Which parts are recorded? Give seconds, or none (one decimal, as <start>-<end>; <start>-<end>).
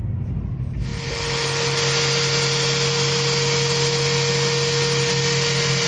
0.0-5.9